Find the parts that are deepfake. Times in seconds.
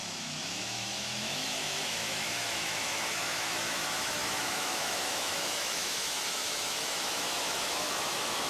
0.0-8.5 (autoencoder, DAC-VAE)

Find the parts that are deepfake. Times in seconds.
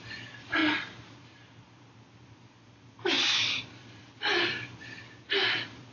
none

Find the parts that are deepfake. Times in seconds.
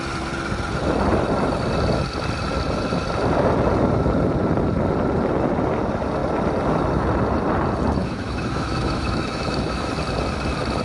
8.0-9.9 (autoencoder, DAC-VAE)